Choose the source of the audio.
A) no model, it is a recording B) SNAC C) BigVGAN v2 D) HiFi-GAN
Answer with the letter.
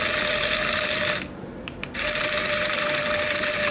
A